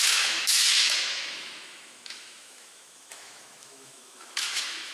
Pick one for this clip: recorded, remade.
remade